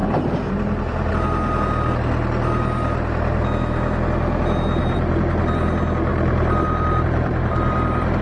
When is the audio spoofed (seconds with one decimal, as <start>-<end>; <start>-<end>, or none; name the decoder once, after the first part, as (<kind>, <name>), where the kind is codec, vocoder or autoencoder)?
0.0-1.1 (vocoder, BigVGAN v2); 4.8-5.4; 6.1-8.2